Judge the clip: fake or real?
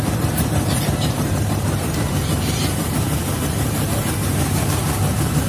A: fake